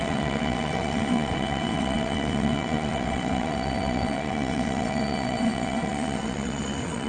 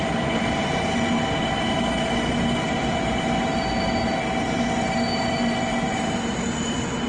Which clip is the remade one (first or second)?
first